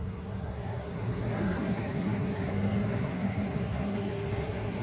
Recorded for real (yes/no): no